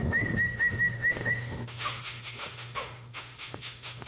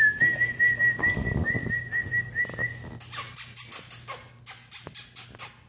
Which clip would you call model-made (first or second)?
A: first